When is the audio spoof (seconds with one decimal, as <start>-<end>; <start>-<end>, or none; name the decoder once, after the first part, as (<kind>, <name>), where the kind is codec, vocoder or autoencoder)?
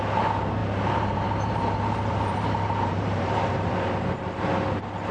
0.6-3.7 (vocoder, BigVGAN v2)